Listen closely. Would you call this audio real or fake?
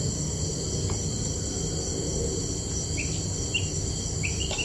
real